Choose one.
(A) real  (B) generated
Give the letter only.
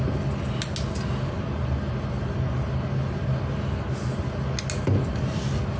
A